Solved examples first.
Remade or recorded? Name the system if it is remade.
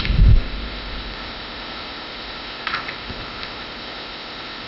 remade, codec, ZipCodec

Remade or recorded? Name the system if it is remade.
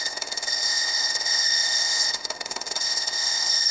remade, codec, ZipCodec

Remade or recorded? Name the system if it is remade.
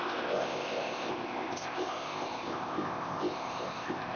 remade, codec, ZipCodec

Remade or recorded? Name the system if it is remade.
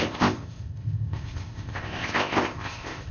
remade, codec, ZipCodec